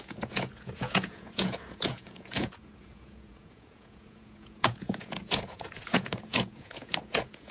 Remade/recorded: remade